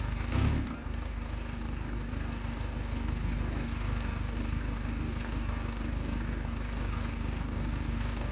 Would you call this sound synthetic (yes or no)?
yes